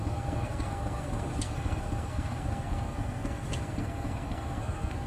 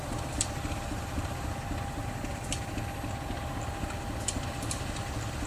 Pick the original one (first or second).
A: second